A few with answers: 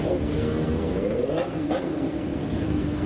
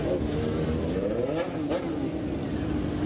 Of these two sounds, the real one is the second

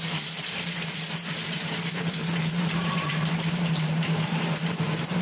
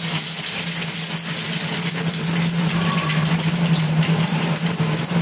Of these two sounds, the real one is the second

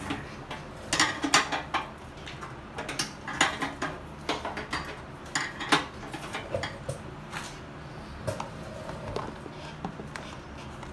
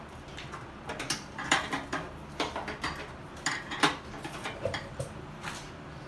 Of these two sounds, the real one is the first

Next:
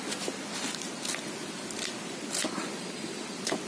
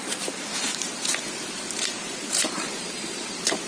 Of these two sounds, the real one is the first